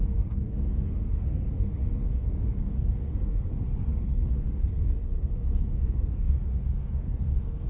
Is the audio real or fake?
fake